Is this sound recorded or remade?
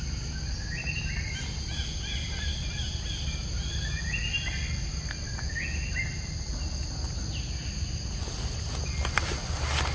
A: recorded